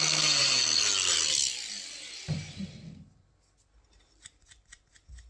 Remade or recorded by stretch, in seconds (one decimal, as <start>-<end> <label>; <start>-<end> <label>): 0.0-5.3 recorded